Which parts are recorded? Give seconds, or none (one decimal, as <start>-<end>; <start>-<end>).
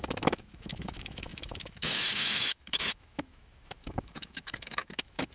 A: none